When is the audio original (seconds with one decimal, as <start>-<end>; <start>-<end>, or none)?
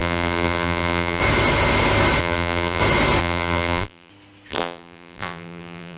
1.2-2.2; 2.8-3.2; 4.1-4.5